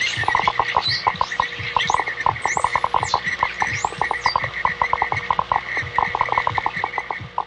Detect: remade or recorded recorded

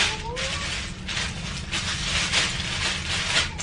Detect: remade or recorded recorded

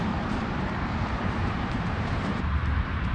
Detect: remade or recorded remade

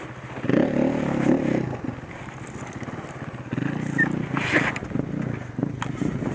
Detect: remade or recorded recorded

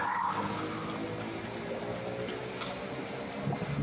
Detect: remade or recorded recorded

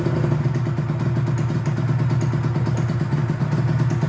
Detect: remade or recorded recorded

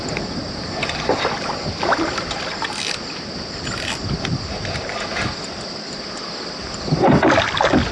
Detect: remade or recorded recorded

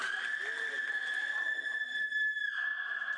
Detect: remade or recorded recorded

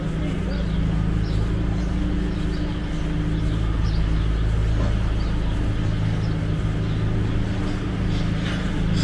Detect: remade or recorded recorded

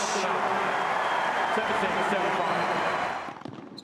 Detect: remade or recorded recorded